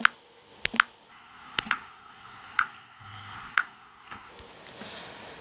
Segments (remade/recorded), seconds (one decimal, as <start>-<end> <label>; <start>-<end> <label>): 0.0-1.1 recorded; 1.1-4.3 remade; 4.3-5.4 recorded